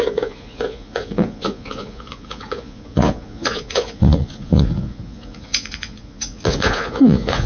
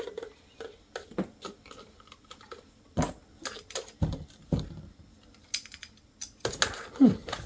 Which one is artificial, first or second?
first